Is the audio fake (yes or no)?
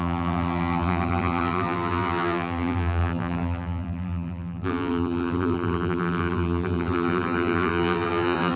yes